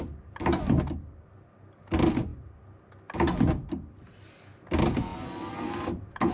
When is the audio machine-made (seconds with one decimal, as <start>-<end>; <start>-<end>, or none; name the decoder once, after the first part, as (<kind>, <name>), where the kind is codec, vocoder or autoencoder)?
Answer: none